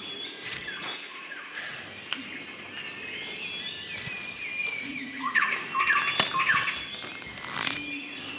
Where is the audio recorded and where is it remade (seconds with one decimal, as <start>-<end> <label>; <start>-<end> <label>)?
0.0-1.1 recorded; 1.1-1.8 remade; 1.8-4.6 recorded; 4.6-5.7 remade; 5.7-8.4 recorded